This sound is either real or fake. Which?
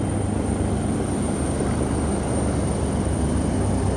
real